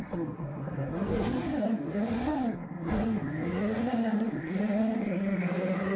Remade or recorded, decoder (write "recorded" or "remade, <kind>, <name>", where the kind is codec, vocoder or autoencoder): remade, codec, SNAC